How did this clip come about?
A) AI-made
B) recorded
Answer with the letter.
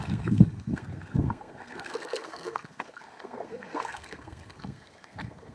A